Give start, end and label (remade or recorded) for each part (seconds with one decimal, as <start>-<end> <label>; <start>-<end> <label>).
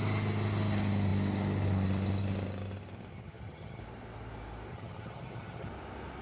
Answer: 0.0-3.1 recorded; 3.1-3.8 remade; 3.8-4.7 recorded; 4.7-5.7 remade; 5.7-6.2 recorded